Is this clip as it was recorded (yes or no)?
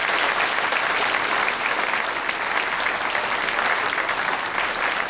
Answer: yes